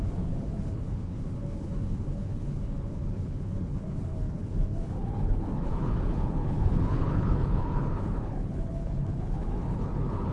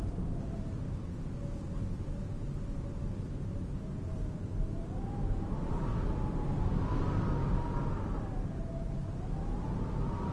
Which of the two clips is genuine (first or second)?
second